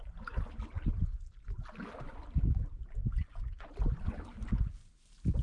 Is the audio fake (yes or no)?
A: no